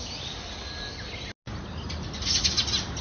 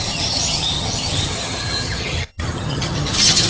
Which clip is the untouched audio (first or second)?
first